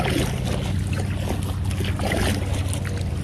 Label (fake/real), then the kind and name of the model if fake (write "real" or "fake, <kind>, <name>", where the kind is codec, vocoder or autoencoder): real